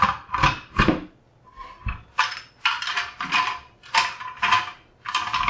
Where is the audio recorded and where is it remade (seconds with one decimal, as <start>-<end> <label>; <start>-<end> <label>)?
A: 0.0-1.6 recorded; 1.6-2.9 remade; 2.9-5.5 recorded